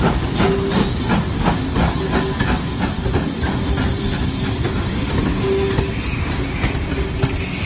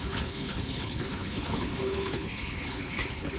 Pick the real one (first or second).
first